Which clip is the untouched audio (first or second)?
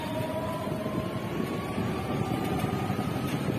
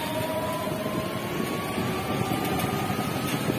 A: second